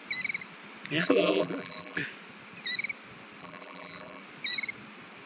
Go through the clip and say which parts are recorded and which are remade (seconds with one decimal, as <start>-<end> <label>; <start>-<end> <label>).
0.0-1.0 recorded; 1.0-2.0 remade; 2.0-3.4 recorded; 3.4-4.2 remade; 4.2-5.3 recorded